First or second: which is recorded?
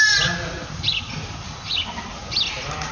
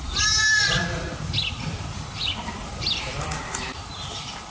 first